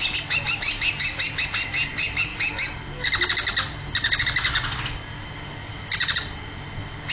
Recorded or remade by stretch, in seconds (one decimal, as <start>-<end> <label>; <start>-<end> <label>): 0.0-7.1 recorded